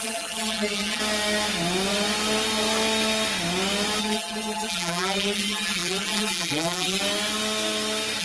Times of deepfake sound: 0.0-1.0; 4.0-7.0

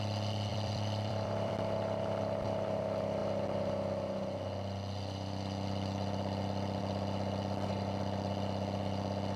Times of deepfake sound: 0.5-1.5